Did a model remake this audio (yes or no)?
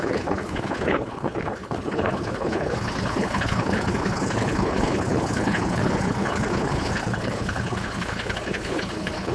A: yes